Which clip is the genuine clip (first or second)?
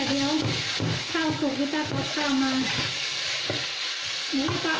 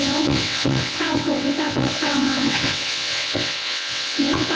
first